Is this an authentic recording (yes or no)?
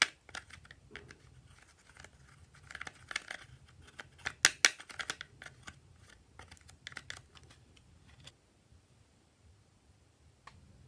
yes